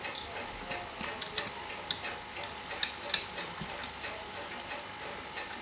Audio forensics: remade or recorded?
recorded